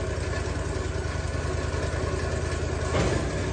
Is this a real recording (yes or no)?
yes